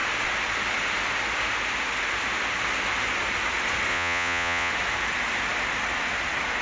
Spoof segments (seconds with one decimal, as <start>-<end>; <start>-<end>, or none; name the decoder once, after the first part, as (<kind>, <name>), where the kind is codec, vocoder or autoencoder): 3.9-4.7 (vocoder, Vocos)

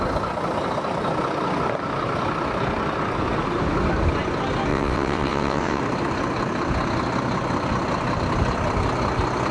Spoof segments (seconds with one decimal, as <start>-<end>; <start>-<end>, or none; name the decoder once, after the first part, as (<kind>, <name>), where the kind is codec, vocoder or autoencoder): 4.7-5.8 (vocoder, WaveNeXt)

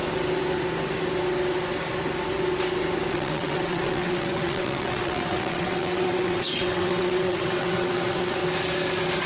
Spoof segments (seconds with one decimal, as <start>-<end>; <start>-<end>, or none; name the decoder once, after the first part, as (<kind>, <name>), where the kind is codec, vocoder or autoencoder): 3.1-8.4 (vocoder, WaveNeXt)

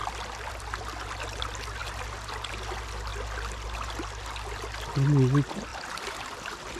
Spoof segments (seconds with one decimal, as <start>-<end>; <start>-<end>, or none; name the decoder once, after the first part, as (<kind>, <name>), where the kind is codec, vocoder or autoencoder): 5.7-6.8 (vocoder, BigVGAN v2)

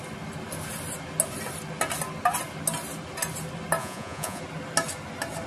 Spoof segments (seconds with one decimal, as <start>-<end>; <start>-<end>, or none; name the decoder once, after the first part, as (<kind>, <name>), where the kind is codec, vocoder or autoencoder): 3.8-4.4 (vocoder, Vocos)

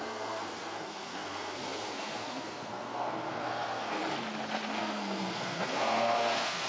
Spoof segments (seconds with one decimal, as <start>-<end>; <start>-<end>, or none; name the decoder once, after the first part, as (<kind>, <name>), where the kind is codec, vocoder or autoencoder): 0.0-4.0 (codec, SNAC); 4.8-6.7

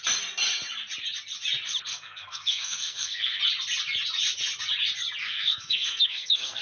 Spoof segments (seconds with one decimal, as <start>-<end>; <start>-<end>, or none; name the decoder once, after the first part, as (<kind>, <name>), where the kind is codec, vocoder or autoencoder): 1.9-3.4 (codec, SNAC); 5.2-6.6